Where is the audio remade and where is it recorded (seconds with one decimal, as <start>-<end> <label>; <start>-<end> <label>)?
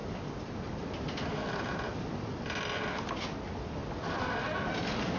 0.0-5.2 recorded